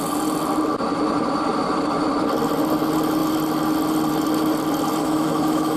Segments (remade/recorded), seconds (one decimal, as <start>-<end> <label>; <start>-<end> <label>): 0.0-5.0 recorded; 5.0-5.8 remade